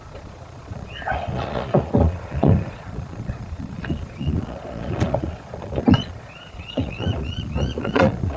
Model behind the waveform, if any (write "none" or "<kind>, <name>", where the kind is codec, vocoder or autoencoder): vocoder, Vocos